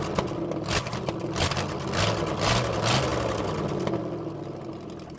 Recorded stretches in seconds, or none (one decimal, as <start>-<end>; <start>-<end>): 0.0-5.2